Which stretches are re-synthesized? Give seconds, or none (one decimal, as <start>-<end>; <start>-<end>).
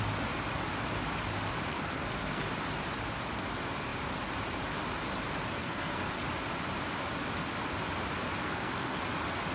1.7-2.4; 5.6-6.1; 8.4-9.0